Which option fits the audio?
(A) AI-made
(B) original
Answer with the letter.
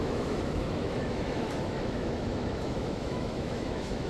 A